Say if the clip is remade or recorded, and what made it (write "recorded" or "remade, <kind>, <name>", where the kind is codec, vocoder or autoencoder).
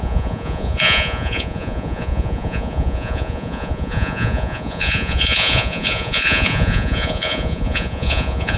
remade, vocoder, Vocos